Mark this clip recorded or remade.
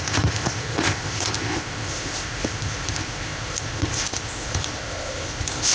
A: remade